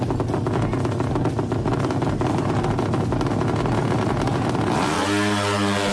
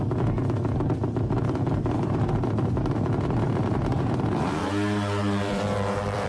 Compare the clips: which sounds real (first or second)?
first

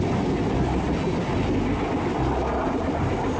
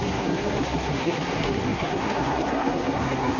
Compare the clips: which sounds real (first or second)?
first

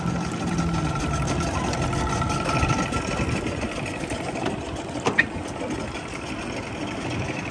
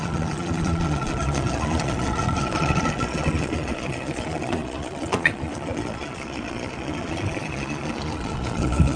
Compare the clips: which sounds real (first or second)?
first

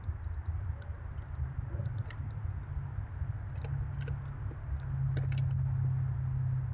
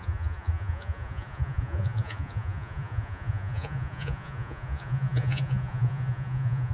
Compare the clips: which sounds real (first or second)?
first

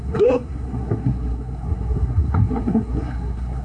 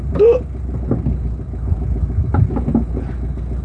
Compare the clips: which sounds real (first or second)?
second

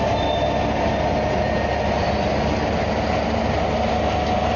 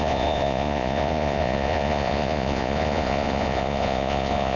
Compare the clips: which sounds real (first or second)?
first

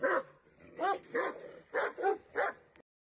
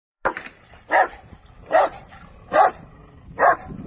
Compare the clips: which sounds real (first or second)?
first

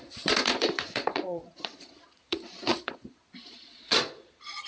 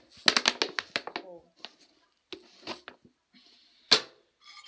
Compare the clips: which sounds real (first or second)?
second